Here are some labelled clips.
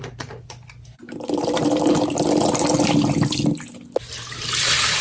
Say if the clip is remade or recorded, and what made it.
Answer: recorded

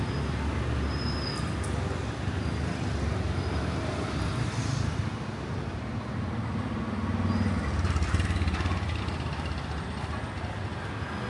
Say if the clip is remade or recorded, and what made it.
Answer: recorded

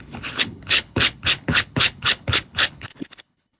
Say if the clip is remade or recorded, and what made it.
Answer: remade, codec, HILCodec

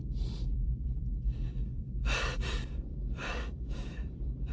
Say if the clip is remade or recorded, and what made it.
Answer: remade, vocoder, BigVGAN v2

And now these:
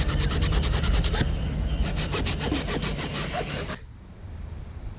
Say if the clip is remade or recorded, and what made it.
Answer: recorded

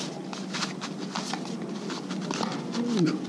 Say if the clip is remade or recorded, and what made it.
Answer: recorded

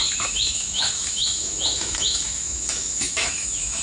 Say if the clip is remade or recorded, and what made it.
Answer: remade, autoencoder, DAC-VAE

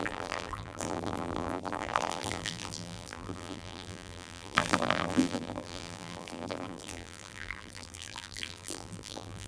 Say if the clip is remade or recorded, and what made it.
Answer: remade, vocoder, BigVGAN v2